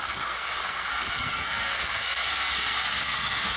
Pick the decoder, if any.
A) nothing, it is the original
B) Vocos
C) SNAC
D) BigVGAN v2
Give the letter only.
C